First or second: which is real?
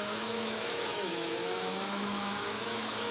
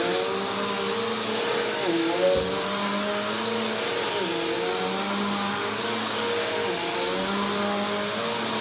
second